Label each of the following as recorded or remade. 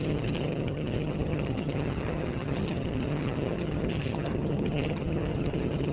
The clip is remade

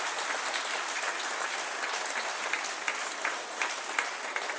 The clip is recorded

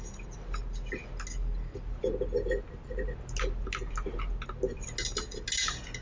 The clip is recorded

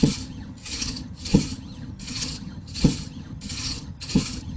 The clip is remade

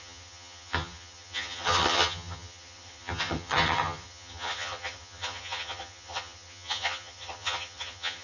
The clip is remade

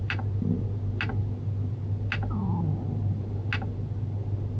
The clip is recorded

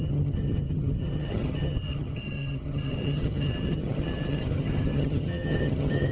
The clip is remade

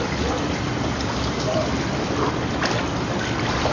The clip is recorded